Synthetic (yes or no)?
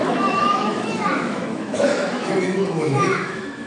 yes